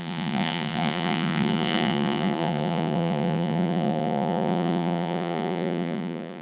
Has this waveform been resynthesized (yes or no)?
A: yes